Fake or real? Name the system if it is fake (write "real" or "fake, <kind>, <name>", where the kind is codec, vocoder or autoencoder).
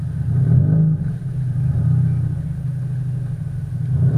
real